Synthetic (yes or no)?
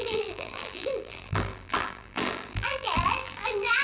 yes